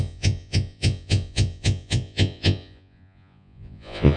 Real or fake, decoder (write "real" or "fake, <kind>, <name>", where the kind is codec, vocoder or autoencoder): fake, vocoder, Vocos